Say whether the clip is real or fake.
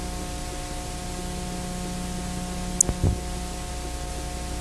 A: real